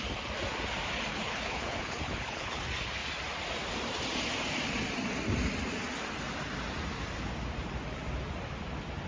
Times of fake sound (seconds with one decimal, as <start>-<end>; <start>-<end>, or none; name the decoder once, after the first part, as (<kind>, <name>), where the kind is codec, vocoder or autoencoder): 1.1-2.6 (codec, HILCodec)